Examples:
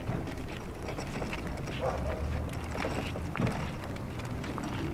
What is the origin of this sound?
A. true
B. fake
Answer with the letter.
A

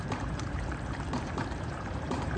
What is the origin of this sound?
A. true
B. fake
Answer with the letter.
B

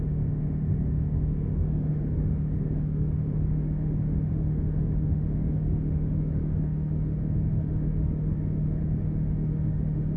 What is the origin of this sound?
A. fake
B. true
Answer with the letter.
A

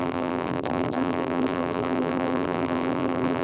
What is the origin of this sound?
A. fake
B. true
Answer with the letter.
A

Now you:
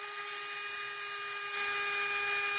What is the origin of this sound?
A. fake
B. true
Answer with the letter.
B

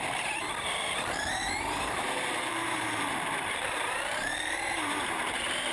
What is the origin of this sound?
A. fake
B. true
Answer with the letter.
A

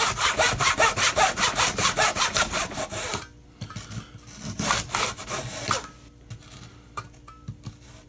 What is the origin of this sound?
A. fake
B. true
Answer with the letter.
B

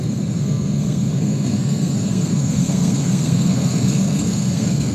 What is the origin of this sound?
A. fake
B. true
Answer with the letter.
A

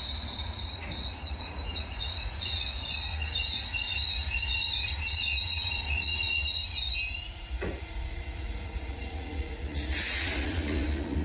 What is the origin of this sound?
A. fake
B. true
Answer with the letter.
A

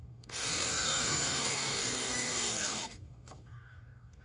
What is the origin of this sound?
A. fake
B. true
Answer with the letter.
A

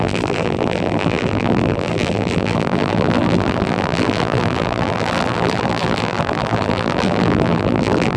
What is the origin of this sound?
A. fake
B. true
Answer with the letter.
A